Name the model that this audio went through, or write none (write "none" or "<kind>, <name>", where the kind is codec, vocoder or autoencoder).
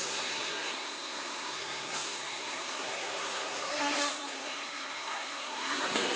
codec, SNAC